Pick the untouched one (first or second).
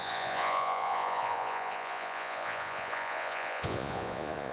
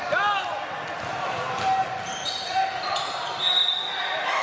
second